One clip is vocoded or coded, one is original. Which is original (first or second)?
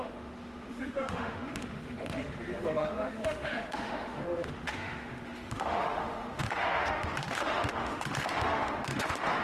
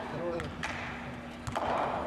second